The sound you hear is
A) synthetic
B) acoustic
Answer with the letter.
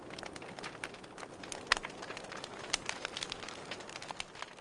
B